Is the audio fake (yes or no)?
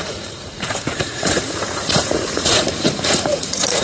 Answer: yes